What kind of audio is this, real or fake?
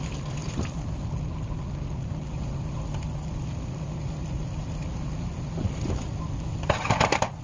real